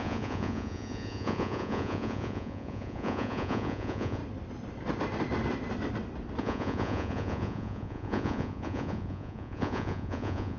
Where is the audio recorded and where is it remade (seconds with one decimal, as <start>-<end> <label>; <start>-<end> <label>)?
0.0-4.2 remade; 4.2-6.4 recorded; 6.4-10.6 remade